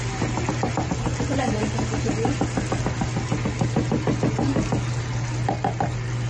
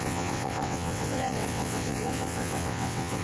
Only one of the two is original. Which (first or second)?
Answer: first